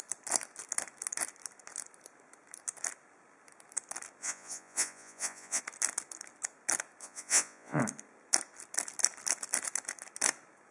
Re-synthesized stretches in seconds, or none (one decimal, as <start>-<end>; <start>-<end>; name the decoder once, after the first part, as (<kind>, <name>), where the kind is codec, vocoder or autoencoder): 4.2-5.6 (vocoder, Vocos); 7.0-7.8